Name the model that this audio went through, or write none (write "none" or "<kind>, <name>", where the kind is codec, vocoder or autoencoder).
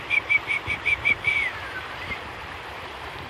none